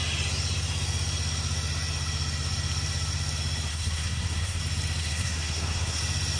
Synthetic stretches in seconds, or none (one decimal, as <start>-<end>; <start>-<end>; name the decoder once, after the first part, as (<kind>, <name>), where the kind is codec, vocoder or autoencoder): 3.7-4.6 (codec, SNAC); 5.0-6.0